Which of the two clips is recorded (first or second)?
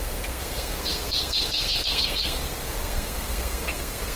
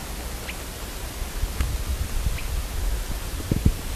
second